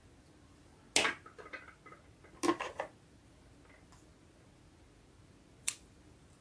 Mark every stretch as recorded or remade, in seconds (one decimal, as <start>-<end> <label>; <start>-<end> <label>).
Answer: 0.0-6.4 recorded